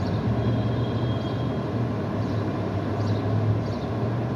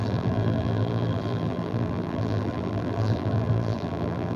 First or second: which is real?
first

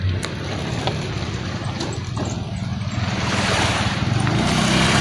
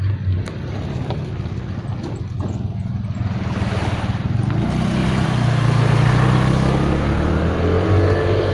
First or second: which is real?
second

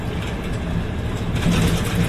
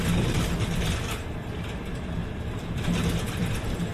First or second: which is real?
first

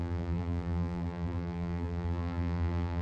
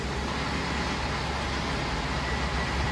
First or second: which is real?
second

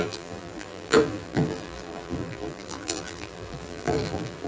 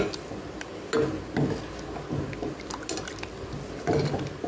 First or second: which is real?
second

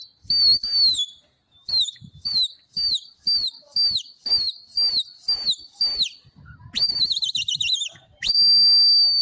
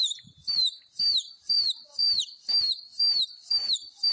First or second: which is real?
first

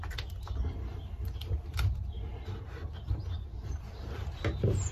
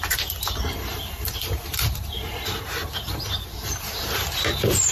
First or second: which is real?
first